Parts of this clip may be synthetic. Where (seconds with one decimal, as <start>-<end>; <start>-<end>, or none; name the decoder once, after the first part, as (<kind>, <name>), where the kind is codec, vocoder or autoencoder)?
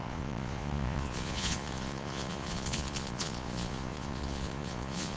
0.0-5.2 (vocoder, Vocos)